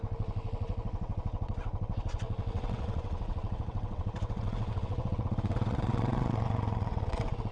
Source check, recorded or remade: remade